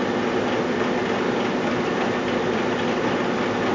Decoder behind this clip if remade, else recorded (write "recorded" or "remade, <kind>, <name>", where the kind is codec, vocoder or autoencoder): recorded